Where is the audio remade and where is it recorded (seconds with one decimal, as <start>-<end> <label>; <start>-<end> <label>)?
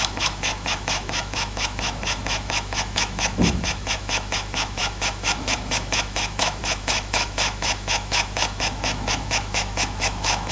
0.0-10.5 remade